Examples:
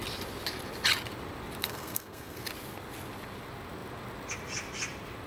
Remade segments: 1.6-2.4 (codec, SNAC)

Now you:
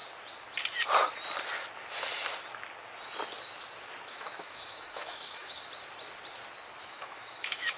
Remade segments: 4.1-5.6 (autoencoder, DAC-VAE); 6.8-7.8